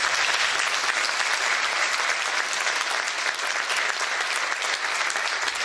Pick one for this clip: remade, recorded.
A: recorded